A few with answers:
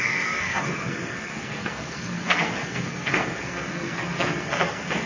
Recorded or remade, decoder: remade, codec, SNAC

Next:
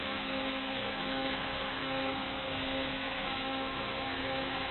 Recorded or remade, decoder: remade, codec, SNAC